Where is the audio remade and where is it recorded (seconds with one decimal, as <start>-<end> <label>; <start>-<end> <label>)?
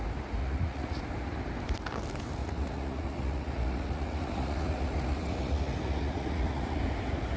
0.0-0.4 recorded; 0.4-1.0 remade; 1.0-2.4 recorded; 2.4-6.8 remade; 6.8-7.4 recorded